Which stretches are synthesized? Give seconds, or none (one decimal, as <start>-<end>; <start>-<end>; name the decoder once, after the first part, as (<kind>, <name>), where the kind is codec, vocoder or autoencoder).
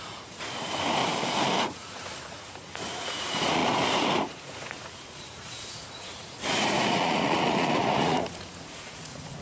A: 0.0-1.0 (vocoder, Vocos); 1.6-9.4